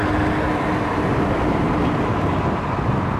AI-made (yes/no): no